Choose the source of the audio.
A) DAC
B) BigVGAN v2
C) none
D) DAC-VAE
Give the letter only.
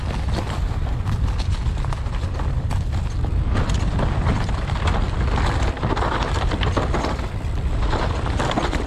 C